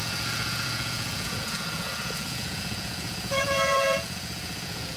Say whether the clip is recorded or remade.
remade